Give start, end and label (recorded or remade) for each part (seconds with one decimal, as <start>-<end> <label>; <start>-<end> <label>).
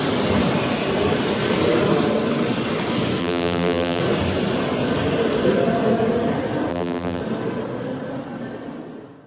0.0-3.2 recorded; 3.2-4.0 remade; 4.0-6.7 recorded; 6.7-7.2 remade; 7.2-9.3 recorded